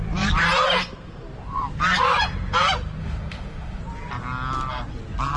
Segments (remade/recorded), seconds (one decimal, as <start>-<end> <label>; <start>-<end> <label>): 0.0-3.0 recorded; 3.0-3.8 remade; 3.8-5.4 recorded